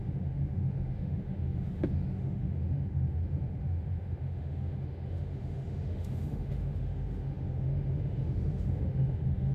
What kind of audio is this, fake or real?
fake